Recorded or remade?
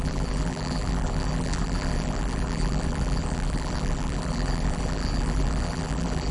remade